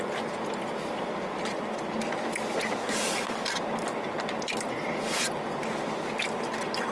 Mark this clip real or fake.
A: real